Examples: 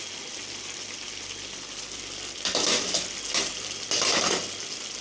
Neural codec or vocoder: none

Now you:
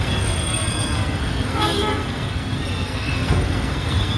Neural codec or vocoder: codec, SNAC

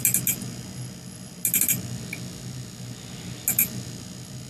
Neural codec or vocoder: none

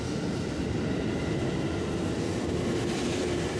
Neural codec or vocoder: none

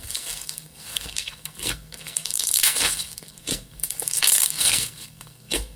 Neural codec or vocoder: codec, SNAC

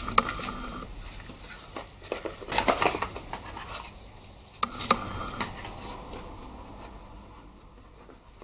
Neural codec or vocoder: none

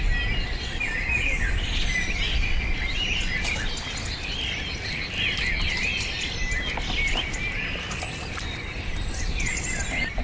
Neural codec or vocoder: none